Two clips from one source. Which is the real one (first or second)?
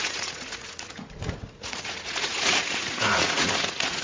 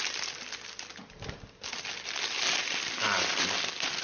second